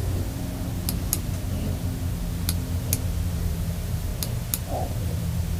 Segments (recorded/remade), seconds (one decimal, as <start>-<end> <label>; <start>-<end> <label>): 0.0-3.4 recorded; 3.4-4.1 remade; 4.1-5.6 recorded